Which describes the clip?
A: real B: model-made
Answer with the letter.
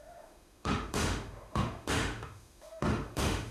B